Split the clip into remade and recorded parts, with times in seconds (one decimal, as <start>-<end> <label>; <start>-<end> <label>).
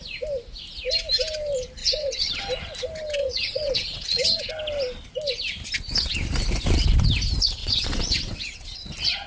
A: 0.0-1.8 recorded; 1.8-2.3 remade; 2.3-3.2 recorded; 3.2-4.5 remade; 4.5-7.6 recorded; 7.6-8.9 remade; 8.9-9.3 recorded